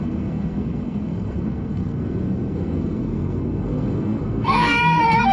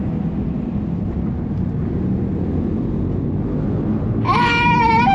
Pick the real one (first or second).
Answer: second